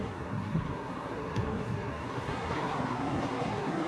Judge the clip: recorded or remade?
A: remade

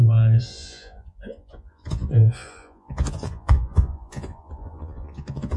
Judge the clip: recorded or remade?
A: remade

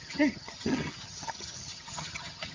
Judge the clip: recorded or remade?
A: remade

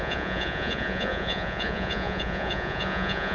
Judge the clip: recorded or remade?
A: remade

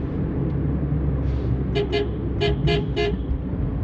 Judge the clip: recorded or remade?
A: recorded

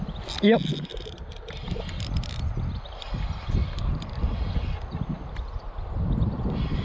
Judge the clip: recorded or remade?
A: recorded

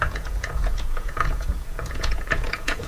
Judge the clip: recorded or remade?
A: remade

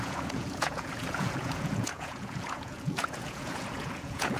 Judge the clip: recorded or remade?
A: remade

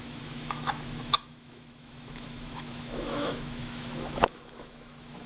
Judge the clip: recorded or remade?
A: remade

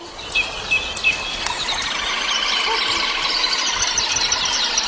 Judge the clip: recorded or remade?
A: recorded